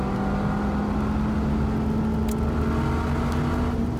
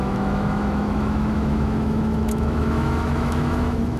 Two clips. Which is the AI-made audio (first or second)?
second